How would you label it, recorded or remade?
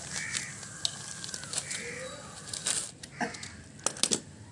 recorded